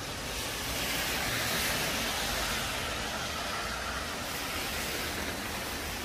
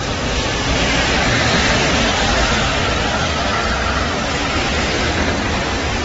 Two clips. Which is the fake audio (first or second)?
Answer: second